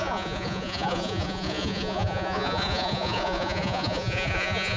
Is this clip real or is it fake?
fake